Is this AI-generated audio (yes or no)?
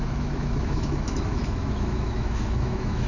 yes